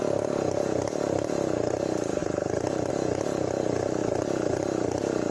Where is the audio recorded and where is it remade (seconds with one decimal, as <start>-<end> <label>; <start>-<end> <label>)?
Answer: 0.0-4.0 recorded; 4.0-5.3 remade